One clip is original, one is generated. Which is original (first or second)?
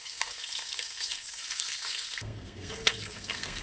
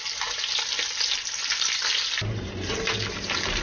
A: second